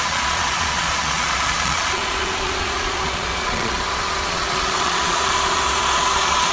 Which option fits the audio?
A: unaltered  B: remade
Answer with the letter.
B